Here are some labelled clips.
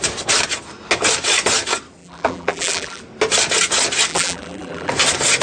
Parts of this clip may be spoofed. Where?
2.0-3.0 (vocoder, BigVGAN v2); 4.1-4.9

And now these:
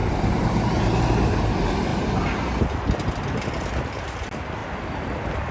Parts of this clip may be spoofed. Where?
0.0-1.0 (vocoder, BigVGAN v2)

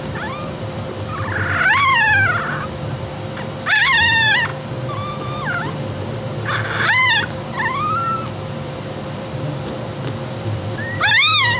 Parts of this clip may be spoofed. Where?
0.0-4.5 (vocoder, BigVGAN v2); 5.1-11.6

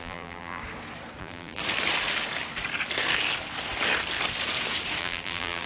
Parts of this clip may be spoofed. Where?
0.0-0.6 (vocoder, BigVGAN v2); 1.2-1.6; 5.0-5.7